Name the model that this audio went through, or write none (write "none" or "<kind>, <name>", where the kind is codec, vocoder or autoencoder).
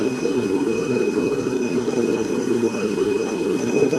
codec, SNAC